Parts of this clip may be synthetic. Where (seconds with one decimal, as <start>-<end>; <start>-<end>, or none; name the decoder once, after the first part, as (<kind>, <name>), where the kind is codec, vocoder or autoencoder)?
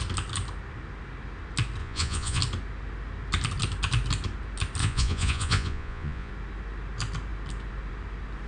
1.8-2.4 (vocoder, Vocos); 4.8-6.3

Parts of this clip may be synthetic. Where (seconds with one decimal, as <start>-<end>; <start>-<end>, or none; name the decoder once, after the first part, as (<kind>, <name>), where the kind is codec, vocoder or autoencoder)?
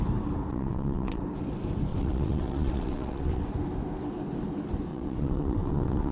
0.5-1.2 (vocoder, WaveNeXt); 1.9-3.4; 4.9-6.1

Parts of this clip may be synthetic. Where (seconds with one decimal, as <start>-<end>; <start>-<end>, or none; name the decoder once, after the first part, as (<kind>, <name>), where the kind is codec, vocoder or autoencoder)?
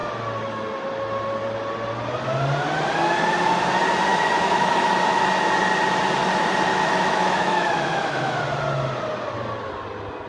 4.1-4.9 (autoencoder, DAC-VAE); 6.7-8.4